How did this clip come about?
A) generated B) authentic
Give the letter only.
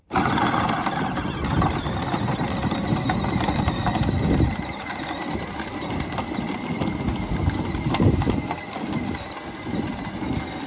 B